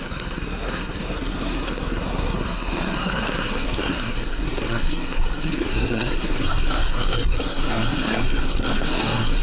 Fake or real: fake